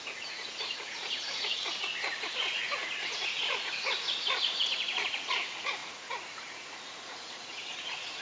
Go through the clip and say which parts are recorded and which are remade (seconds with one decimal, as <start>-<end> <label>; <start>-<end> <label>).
0.0-1.6 remade; 1.6-2.4 recorded; 2.4-8.2 remade